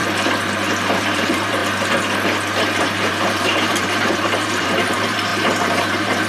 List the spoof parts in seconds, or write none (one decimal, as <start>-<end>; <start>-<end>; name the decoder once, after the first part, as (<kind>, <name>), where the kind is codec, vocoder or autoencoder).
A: 1.0-1.6 (vocoder, BigVGAN v2); 2.8-6.3